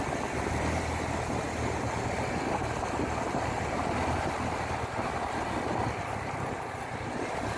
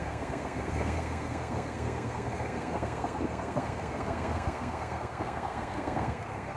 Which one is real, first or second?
first